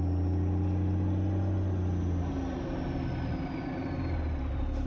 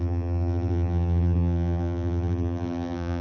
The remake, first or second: second